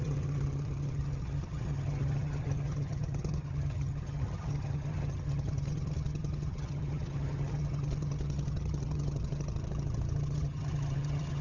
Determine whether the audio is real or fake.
fake